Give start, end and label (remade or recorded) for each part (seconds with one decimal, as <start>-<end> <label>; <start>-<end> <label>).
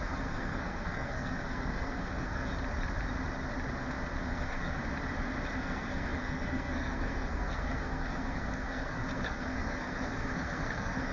0.0-2.5 remade; 2.5-4.2 recorded; 4.2-4.8 remade; 4.8-5.6 recorded; 5.6-11.1 remade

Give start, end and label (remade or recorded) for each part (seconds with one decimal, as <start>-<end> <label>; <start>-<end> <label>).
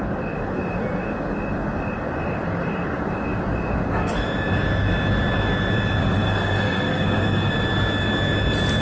0.0-6.0 recorded; 6.0-7.5 remade; 7.5-8.8 recorded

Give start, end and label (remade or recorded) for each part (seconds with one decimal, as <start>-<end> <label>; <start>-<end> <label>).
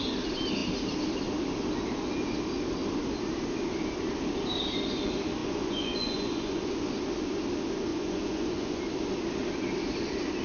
0.0-5.4 recorded; 5.4-6.7 remade; 6.7-7.9 recorded; 7.9-8.8 remade; 8.8-10.4 recorded